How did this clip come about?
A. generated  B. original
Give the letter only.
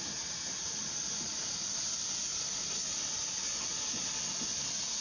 B